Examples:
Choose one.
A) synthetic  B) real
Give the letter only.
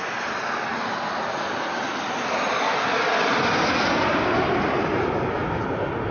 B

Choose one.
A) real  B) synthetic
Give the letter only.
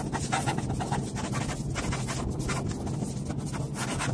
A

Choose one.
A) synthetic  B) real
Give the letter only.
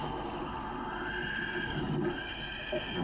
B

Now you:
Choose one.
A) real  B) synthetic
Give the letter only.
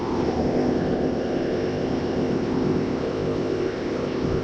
B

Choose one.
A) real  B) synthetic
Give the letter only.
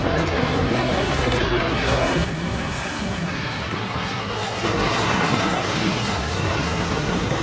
B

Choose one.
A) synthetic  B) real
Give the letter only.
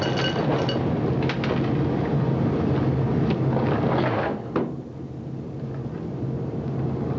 B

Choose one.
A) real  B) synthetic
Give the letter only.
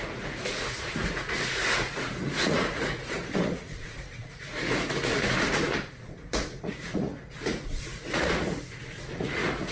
B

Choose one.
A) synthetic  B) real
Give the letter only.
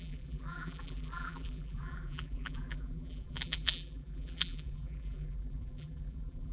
A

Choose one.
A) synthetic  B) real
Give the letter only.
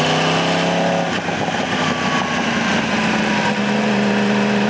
B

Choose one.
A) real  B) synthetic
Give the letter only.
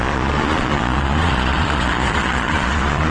B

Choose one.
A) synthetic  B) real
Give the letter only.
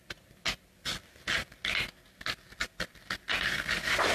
B